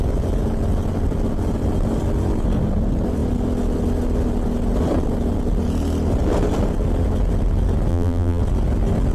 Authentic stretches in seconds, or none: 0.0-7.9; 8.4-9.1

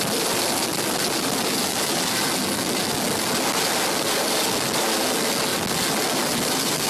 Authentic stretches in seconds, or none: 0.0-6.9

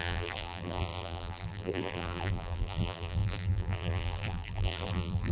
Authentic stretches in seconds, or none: none

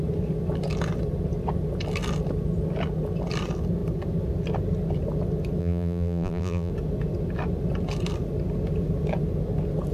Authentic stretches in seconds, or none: 0.0-5.6; 6.7-9.9

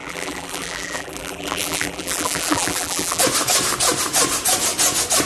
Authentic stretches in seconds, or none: 3.2-5.3

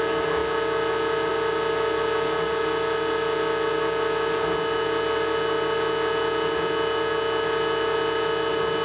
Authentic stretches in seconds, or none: 0.0-8.8

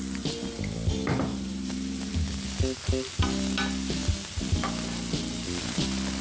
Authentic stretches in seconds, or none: 0.0-1.3; 2.1-6.2